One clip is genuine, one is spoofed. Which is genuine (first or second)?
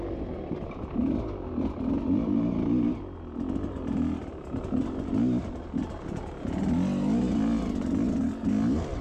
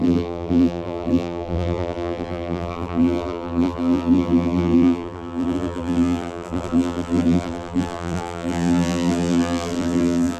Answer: first